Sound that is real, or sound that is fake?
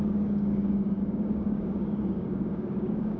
fake